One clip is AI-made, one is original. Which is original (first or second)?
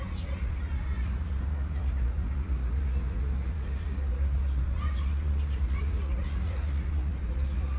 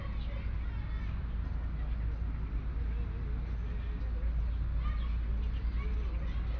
second